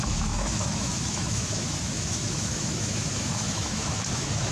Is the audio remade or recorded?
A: remade